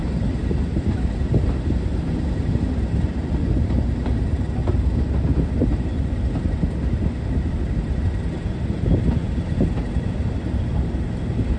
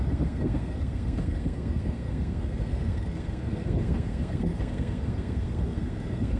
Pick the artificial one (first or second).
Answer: second